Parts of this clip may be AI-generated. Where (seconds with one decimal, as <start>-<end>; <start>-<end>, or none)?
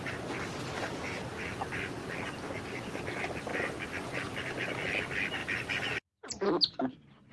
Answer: none